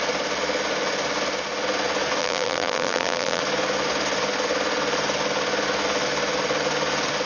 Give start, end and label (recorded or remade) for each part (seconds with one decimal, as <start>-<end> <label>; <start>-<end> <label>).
0.0-2.2 recorded; 2.2-3.4 remade; 3.4-7.3 recorded